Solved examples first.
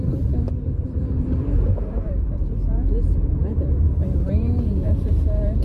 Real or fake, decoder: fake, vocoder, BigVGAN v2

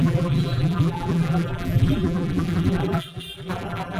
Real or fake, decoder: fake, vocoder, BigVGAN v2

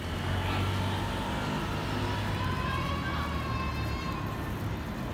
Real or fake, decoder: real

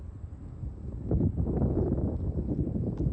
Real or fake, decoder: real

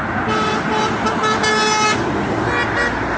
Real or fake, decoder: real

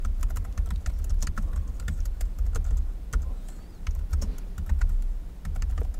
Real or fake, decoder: real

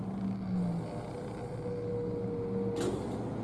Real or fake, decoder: real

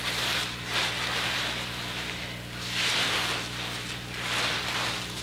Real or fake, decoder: real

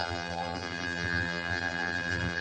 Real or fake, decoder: fake, vocoder, BigVGAN v2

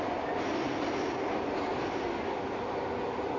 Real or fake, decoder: real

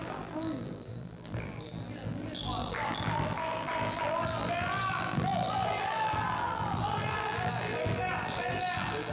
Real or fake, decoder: fake, vocoder, BigVGAN v2